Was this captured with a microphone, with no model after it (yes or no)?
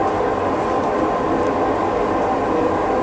yes